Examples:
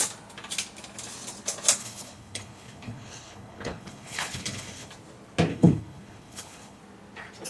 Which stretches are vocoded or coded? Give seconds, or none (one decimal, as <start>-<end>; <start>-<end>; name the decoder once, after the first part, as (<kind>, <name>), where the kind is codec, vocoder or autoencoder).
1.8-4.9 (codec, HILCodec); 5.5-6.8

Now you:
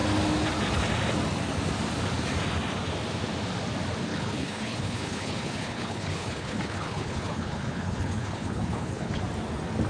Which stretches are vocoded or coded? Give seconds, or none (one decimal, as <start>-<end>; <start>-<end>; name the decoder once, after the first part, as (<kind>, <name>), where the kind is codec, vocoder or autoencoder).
4.1-9.2 (codec, HILCodec)

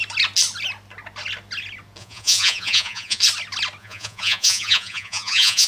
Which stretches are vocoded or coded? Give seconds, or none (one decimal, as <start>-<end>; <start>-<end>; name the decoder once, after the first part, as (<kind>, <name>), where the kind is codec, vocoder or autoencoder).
2.0-3.2 (vocoder, Vocos); 3.8-5.7